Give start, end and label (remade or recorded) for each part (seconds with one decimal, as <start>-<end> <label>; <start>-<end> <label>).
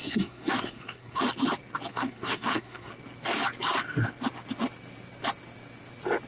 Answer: 0.0-1.2 remade; 1.2-1.9 recorded; 1.9-2.9 remade; 2.9-6.3 recorded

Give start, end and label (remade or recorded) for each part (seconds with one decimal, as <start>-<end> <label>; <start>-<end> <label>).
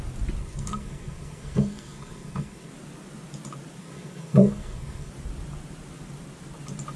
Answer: 0.0-0.4 recorded; 0.4-2.7 remade; 2.7-3.8 recorded; 3.8-5.1 remade; 5.1-7.0 recorded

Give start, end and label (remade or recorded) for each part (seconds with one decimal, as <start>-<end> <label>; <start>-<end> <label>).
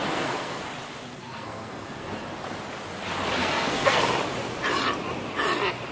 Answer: 0.0-0.6 remade; 0.6-1.2 recorded; 1.2-2.1 remade; 2.1-3.4 recorded; 3.4-4.0 remade; 4.0-5.9 recorded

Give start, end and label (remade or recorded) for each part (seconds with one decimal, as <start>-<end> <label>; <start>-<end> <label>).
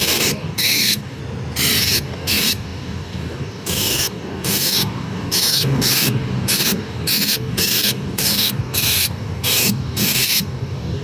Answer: 0.0-1.2 remade; 1.2-1.8 recorded; 1.8-11.0 remade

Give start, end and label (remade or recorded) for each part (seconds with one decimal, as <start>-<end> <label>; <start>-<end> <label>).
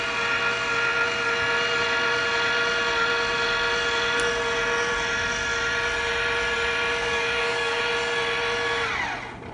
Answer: 0.0-7.0 recorded; 7.0-7.8 remade; 7.8-9.5 recorded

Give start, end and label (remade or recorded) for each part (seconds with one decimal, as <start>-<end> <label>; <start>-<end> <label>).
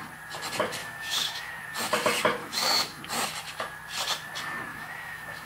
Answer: 0.0-0.8 recorded; 0.8-1.5 remade; 1.5-2.4 recorded; 2.4-3.0 remade; 3.0-4.7 recorded; 4.7-5.5 remade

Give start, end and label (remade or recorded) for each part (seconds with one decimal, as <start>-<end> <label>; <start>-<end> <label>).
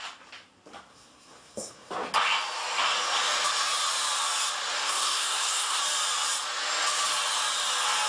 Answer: 0.0-0.9 recorded; 0.9-1.9 remade; 1.9-4.8 recorded; 4.8-5.8 remade; 5.8-8.1 recorded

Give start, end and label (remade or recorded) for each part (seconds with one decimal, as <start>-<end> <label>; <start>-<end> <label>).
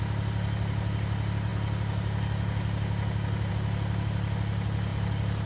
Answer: 0.0-4.9 recorded; 4.9-5.5 remade